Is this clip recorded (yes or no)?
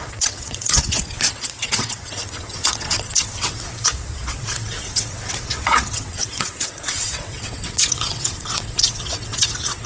no